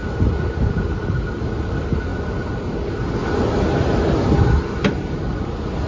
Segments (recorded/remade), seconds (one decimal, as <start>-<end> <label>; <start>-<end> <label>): 0.0-5.9 recorded